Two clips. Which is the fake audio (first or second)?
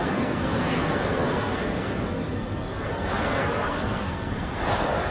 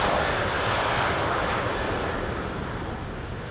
first